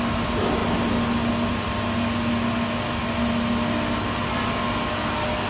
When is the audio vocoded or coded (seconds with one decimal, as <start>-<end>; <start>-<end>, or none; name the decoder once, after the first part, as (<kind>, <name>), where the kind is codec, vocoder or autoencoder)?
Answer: none